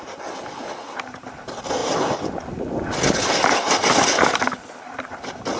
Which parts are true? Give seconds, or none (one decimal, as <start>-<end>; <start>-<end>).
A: 0.0-5.6